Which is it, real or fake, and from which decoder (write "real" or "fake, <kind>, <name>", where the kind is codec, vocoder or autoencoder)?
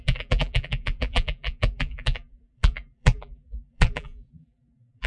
fake, vocoder, BigVGAN v2